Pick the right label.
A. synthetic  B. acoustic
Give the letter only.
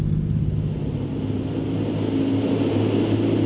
B